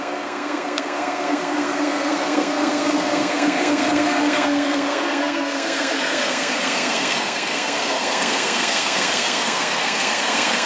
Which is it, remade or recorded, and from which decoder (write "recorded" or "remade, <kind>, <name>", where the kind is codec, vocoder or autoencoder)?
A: remade, codec, SNAC